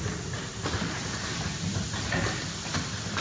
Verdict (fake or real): real